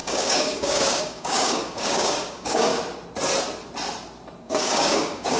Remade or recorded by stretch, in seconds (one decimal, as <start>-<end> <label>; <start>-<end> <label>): 0.0-2.7 remade; 2.7-4.4 recorded; 4.4-5.4 remade